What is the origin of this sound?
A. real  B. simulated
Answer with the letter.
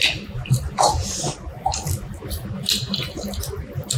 A